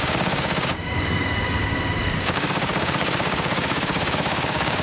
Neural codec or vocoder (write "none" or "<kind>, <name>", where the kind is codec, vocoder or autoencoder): codec, DAC